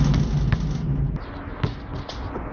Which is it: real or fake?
real